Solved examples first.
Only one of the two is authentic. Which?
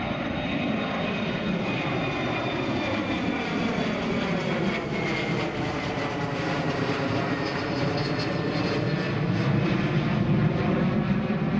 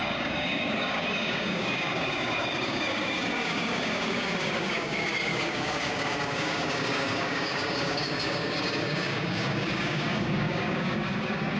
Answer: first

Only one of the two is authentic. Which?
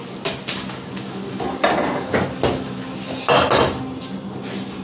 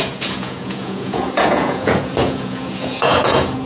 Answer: first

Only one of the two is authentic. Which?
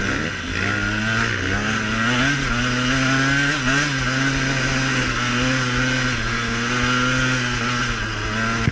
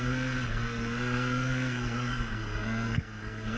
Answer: first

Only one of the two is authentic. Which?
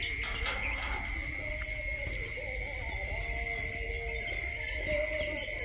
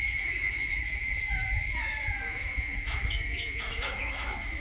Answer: first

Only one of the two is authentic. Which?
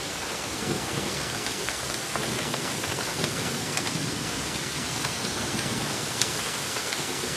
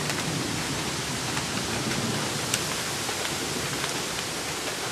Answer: second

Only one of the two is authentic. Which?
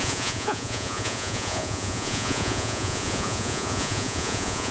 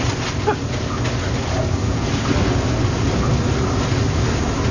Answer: second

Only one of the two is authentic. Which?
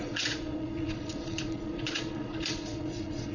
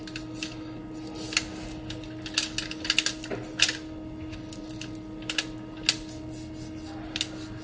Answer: second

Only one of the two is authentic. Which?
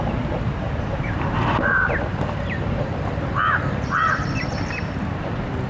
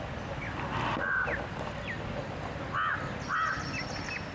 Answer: second